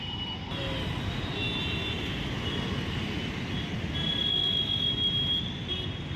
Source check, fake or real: real